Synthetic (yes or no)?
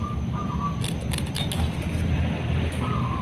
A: no